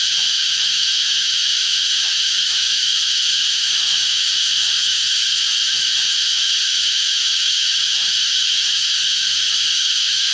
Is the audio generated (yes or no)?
yes